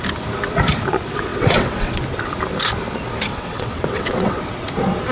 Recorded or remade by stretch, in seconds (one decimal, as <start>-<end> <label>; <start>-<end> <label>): 0.0-1.3 recorded; 1.3-2.0 remade; 2.0-3.3 recorded; 3.3-4.4 remade; 4.4-5.1 recorded